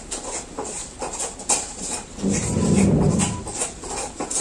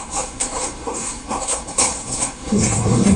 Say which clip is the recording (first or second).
first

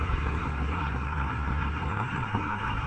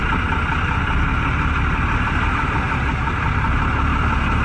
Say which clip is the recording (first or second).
second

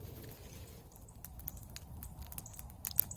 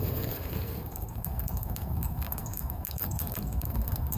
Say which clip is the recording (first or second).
first